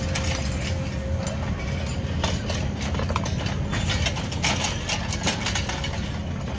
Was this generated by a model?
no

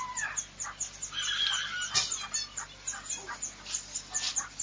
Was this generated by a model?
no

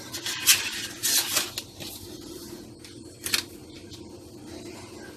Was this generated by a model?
no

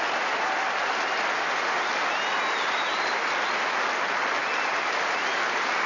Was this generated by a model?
no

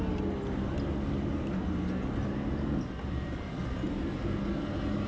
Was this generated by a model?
no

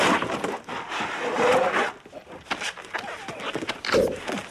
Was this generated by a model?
no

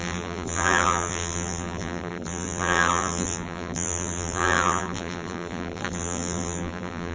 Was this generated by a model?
yes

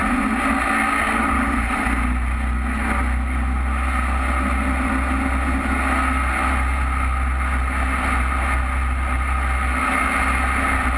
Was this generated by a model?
no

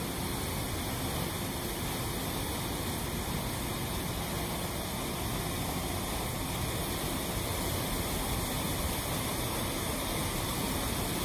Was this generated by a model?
no